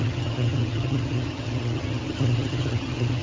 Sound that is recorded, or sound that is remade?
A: remade